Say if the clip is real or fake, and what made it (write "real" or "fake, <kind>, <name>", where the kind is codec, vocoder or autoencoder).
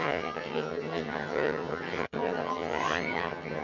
fake, vocoder, HiFi-GAN